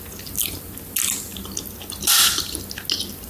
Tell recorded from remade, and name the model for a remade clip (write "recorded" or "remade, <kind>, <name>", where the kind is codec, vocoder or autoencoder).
recorded